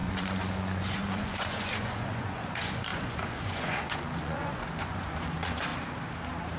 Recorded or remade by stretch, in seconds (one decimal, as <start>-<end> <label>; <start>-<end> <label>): 0.0-5.7 remade; 5.7-6.6 recorded

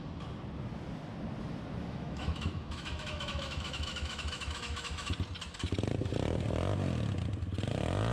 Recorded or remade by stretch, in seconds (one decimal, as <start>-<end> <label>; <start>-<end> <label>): 0.0-1.8 recorded; 1.8-5.1 remade; 5.1-8.1 recorded

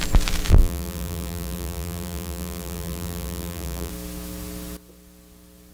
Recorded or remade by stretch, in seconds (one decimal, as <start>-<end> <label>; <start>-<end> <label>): 0.0-0.5 recorded; 0.5-3.9 remade; 3.9-5.7 recorded

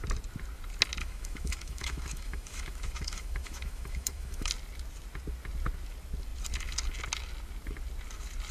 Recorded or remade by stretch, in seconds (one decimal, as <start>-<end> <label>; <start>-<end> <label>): 0.0-1.0 recorded; 1.0-4.5 remade; 4.5-8.5 recorded

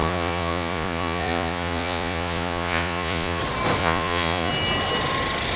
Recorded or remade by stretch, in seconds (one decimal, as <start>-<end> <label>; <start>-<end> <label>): 0.0-3.4 remade; 3.4-3.8 recorded; 3.8-4.5 remade; 4.5-5.6 recorded

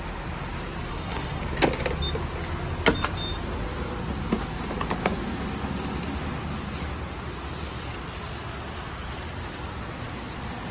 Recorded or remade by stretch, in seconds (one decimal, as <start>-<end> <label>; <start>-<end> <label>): 0.0-0.9 recorded; 0.9-1.4 remade; 1.4-10.7 recorded

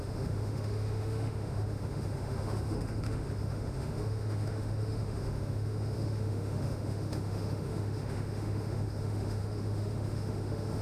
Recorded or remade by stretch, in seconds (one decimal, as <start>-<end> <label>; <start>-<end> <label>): 0.0-10.8 remade

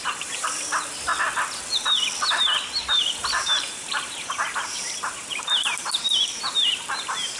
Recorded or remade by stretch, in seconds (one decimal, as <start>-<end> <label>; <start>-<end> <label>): 0.0-1.1 remade; 1.1-3.2 recorded; 3.2-7.4 remade